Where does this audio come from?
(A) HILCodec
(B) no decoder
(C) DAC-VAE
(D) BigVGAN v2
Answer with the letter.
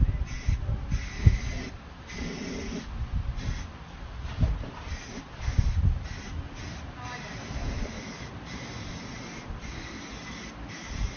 B